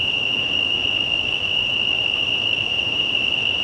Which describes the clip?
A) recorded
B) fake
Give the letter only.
B